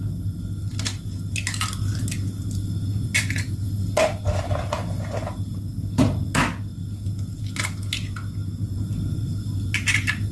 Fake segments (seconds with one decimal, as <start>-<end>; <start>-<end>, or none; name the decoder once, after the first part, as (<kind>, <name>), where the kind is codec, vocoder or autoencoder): none